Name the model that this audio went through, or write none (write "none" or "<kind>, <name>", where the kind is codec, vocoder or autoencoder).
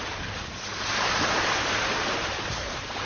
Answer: vocoder, BigVGAN v2